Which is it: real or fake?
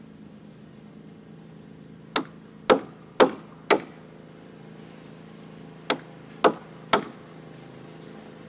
real